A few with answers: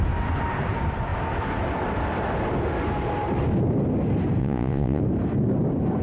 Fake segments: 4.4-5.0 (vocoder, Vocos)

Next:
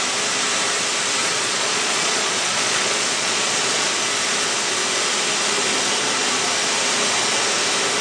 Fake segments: 1.2-3.9 (vocoder, Vocos)

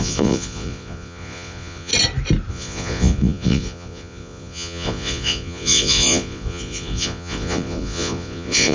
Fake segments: 0.0-1.9 (vocoder, Vocos); 2.5-8.7

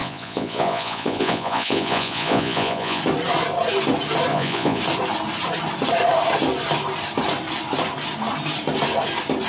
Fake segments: 0.0-3.0 (vocoder, Vocos); 4.3-4.8